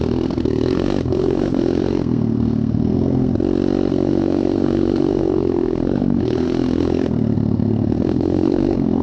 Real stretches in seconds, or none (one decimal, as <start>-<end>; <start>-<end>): 3.3-3.9